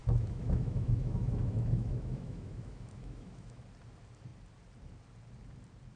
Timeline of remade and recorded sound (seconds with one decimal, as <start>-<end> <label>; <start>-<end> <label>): 0.0-3.6 remade; 3.6-6.0 recorded

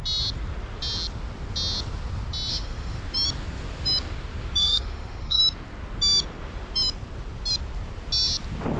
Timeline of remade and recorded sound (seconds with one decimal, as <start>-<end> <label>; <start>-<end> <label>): 0.0-2.5 recorded; 2.5-3.0 remade; 3.0-4.6 recorded; 4.6-5.4 remade; 5.4-8.8 recorded

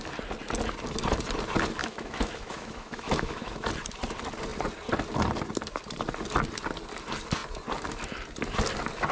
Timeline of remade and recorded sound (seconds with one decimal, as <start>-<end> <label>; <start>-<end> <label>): 0.0-1.8 recorded; 1.8-3.7 remade; 3.7-9.1 recorded

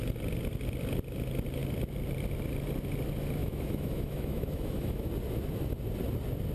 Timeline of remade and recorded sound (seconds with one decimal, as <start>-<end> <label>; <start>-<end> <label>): 0.0-3.4 recorded; 3.4-5.1 remade; 5.1-6.5 recorded

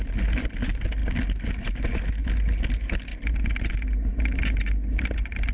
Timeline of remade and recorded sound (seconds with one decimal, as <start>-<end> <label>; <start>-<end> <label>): 0.0-5.5 recorded

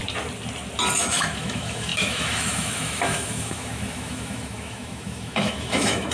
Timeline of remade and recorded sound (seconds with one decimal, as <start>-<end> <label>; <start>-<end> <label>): 0.0-1.0 recorded; 1.0-6.1 remade

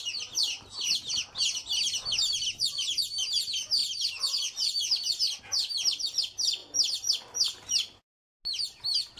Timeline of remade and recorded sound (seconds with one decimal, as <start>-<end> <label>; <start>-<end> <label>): 0.0-9.2 recorded